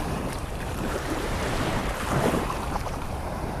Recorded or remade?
remade